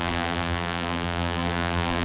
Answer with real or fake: fake